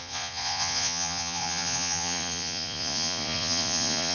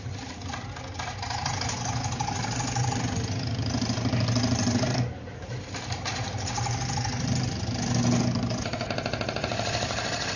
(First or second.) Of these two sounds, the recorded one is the second